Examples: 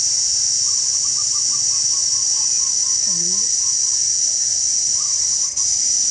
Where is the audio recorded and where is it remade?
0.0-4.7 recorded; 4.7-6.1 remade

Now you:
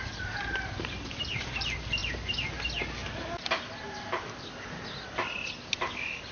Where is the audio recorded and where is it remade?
0.0-2.0 recorded; 2.0-2.5 remade; 2.5-3.0 recorded; 3.0-3.5 remade; 3.5-6.3 recorded

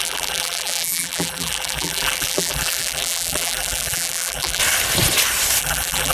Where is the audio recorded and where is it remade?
0.0-4.6 remade; 4.6-5.6 recorded; 5.6-6.1 remade